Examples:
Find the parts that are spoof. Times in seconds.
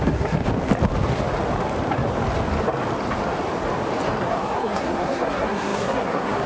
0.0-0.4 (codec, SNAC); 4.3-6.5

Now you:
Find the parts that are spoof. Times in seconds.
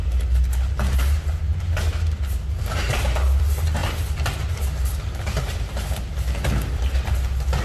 none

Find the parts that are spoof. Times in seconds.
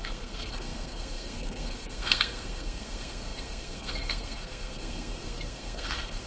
0.0-6.3 (codec, SNAC)